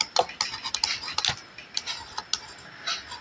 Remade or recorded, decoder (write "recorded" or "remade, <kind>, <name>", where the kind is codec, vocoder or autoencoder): recorded